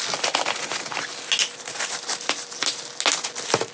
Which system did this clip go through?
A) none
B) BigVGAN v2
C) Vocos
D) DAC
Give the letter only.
A